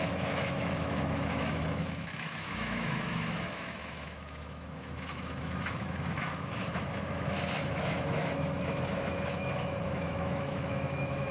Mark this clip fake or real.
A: fake